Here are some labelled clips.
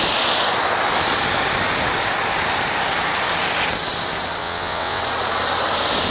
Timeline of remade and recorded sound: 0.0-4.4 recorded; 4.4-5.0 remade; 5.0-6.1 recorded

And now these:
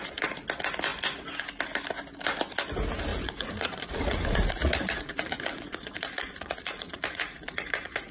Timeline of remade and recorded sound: 0.0-3.1 recorded; 3.1-8.1 remade

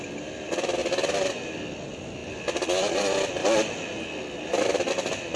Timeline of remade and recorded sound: 0.0-5.4 recorded

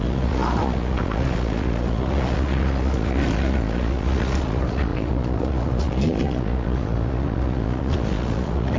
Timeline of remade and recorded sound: 0.0-8.8 remade

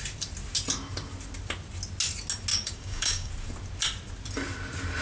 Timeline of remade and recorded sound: 0.0-2.5 recorded; 2.5-3.3 remade; 3.3-5.0 recorded

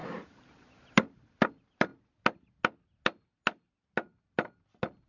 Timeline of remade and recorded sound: 0.0-5.1 recorded

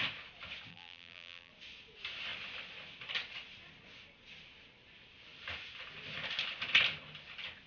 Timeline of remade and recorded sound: 0.0-0.7 recorded; 0.7-1.5 remade; 1.5-7.7 recorded

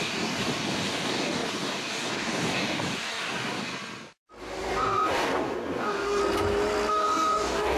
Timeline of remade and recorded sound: 0.0-3.7 remade; 3.7-4.4 recorded; 4.4-6.2 remade; 6.2-6.9 recorded; 6.9-7.8 remade